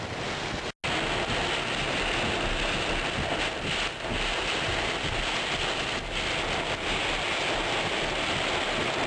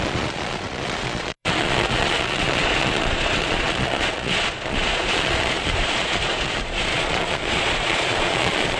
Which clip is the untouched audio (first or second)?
first